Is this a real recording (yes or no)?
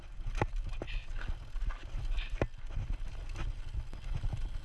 yes